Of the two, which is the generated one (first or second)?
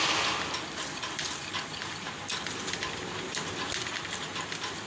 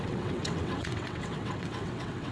second